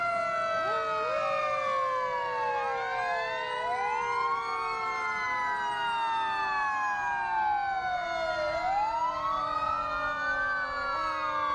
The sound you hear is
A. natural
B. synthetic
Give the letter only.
A